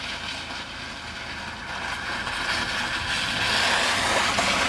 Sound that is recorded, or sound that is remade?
recorded